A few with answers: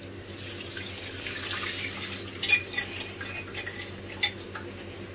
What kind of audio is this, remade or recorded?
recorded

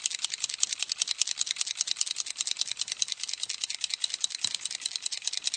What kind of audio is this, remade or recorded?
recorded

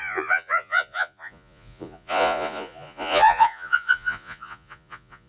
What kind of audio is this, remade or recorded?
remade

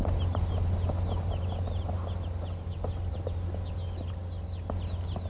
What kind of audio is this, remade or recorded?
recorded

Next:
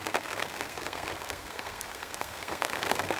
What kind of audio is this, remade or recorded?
remade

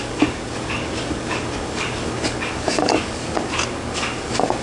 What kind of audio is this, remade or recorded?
remade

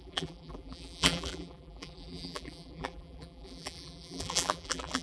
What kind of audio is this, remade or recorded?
remade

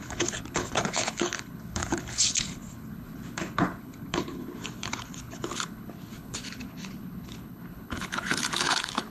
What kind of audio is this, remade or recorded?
remade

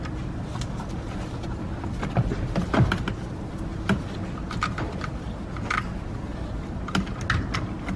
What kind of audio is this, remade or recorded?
recorded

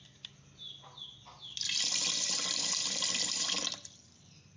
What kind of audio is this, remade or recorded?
recorded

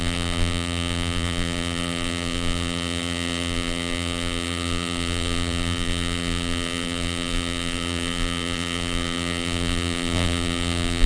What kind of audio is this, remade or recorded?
remade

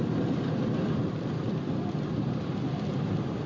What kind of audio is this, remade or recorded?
recorded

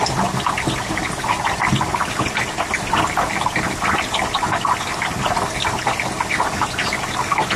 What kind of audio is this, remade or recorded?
recorded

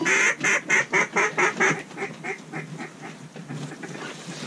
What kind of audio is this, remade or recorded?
recorded